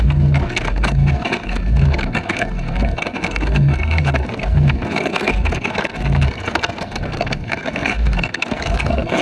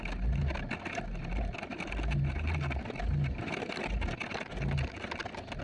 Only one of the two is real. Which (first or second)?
second